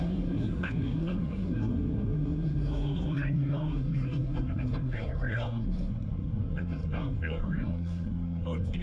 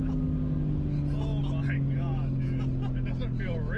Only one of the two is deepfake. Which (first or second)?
first